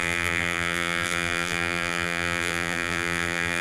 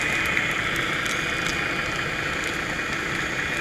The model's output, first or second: first